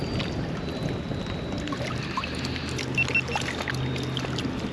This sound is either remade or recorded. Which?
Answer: recorded